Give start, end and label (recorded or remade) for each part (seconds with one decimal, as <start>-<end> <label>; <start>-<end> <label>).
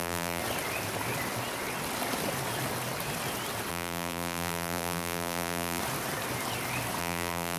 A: 0.0-0.4 remade; 0.4-3.7 recorded; 3.7-5.8 remade; 5.8-7.0 recorded; 7.0-7.6 remade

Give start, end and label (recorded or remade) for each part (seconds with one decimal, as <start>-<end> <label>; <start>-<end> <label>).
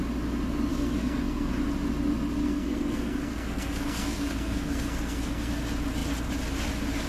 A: 0.0-0.7 recorded; 0.7-1.5 remade; 1.5-2.4 recorded; 2.4-5.5 remade; 5.5-7.1 recorded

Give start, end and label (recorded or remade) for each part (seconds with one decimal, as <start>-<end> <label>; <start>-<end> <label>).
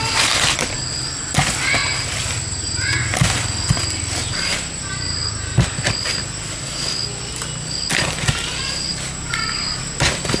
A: 0.0-10.4 recorded